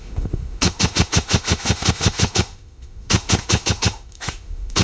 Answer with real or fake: fake